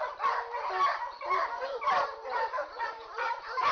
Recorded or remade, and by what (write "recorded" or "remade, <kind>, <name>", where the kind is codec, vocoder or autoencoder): recorded